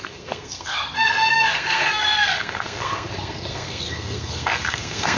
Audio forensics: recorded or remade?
remade